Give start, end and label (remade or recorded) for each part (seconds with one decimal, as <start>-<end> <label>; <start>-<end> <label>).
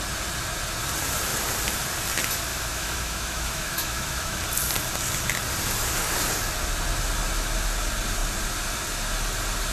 0.0-2.5 recorded; 2.5-4.4 remade; 4.4-9.7 recorded